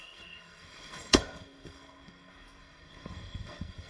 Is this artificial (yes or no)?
yes